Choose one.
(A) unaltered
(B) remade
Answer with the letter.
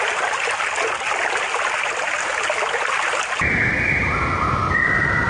A